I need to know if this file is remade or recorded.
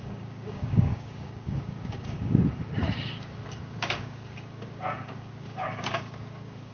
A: remade